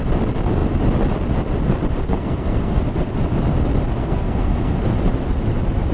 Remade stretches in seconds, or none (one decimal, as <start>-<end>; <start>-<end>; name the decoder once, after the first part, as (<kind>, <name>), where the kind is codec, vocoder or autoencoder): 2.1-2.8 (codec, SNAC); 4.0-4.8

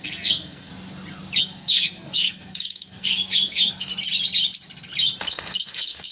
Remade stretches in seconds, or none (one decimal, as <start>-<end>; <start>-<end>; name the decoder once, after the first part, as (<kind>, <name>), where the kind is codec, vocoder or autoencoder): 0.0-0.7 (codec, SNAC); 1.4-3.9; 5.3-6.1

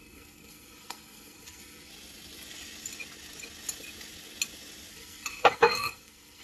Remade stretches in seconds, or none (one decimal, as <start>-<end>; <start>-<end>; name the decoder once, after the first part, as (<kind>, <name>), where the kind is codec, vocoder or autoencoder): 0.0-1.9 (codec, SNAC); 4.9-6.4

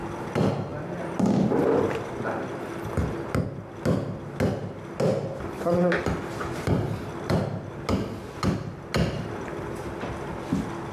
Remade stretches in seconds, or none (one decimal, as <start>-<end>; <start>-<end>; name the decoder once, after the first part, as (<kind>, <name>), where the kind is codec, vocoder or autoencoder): none

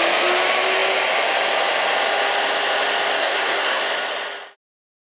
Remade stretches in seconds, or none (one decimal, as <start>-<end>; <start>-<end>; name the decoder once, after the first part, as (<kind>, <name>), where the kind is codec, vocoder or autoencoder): 3.2-3.8 (codec, SNAC)

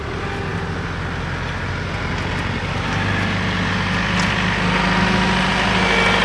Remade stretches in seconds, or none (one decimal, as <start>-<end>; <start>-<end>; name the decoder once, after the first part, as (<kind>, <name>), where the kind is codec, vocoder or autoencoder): none